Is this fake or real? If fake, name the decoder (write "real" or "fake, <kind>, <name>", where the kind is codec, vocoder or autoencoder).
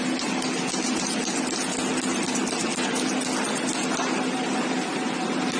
real